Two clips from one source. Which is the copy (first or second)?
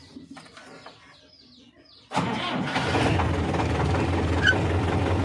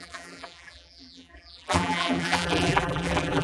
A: second